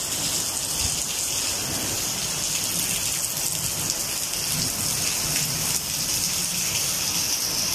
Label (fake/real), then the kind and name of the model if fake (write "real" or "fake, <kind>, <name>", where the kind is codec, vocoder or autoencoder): real